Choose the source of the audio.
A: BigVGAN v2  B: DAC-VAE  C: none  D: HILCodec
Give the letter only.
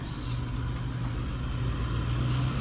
C